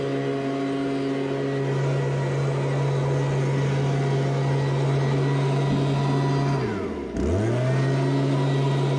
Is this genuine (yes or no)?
yes